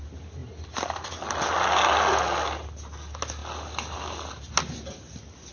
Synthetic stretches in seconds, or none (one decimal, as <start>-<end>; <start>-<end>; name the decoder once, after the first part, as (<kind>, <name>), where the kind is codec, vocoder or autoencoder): none